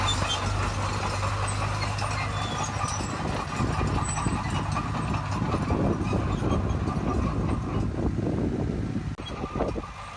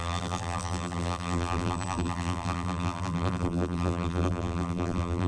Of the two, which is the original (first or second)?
first